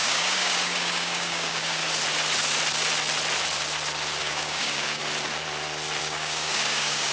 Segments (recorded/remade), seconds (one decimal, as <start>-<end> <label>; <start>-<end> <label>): 0.0-1.8 remade; 1.8-4.2 recorded; 4.2-5.0 remade; 5.0-6.0 recorded; 6.0-7.1 remade